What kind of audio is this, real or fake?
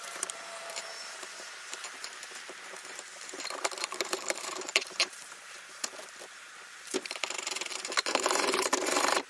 fake